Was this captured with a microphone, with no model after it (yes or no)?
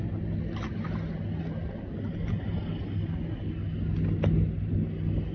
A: yes